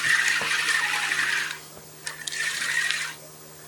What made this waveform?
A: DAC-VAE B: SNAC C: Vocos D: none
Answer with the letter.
D